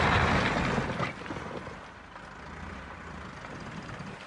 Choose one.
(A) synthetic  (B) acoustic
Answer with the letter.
B